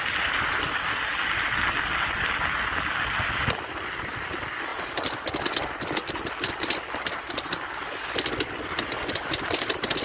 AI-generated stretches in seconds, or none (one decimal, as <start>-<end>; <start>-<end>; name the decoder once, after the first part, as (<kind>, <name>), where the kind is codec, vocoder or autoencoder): none